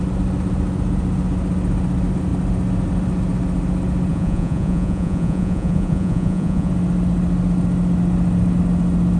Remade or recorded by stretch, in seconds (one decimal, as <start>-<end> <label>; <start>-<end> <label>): 0.0-4.1 recorded; 4.1-6.7 remade; 6.7-9.2 recorded